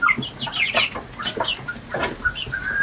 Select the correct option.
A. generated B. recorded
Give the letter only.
B